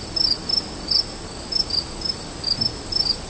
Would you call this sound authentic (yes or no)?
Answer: yes